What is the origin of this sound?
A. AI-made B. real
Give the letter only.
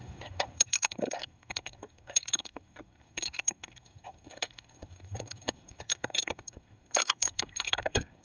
A